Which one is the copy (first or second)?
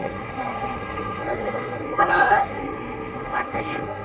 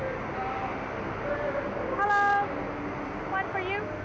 first